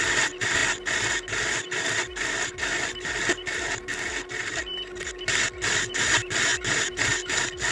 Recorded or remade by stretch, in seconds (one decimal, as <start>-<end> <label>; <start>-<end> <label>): 0.0-7.7 recorded